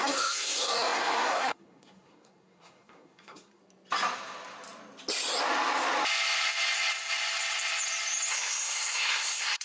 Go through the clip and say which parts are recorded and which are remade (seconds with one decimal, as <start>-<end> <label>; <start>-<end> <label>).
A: 0.0-3.6 remade; 3.6-8.3 recorded; 8.3-9.6 remade